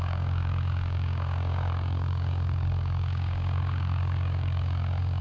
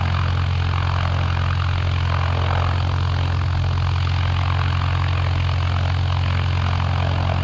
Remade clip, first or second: first